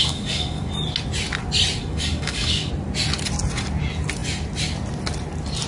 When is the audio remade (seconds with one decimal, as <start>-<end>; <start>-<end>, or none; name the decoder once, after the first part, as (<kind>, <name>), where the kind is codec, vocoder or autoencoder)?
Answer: 0.0-0.7 (codec, DAC); 1.8-2.7